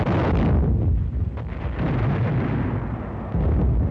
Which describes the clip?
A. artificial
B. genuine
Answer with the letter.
B